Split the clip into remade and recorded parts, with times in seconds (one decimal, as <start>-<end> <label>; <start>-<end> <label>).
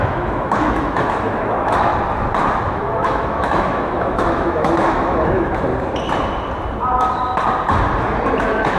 0.0-1.9 remade; 1.9-2.7 recorded; 2.7-5.7 remade; 5.7-8.4 recorded; 8.4-8.8 remade